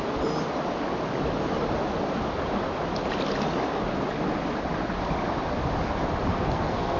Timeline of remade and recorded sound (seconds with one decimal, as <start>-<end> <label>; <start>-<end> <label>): 0.0-6.3 recorded; 6.3-7.0 remade